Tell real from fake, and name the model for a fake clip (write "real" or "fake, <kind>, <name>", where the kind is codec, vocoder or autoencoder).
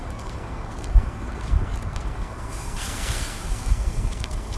fake, codec, SNAC